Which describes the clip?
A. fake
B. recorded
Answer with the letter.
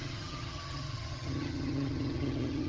A